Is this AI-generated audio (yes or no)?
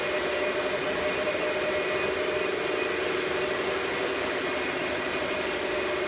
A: no